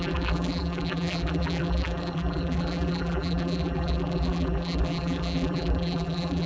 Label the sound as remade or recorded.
remade